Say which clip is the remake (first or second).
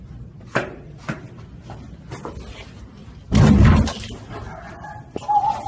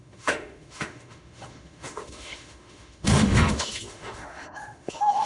second